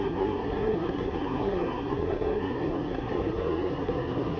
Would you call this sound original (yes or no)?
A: no